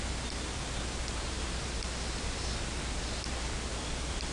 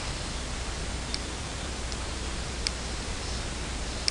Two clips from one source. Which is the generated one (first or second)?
second